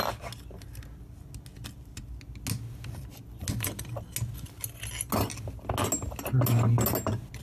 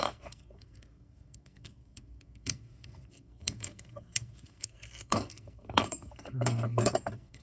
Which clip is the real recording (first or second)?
first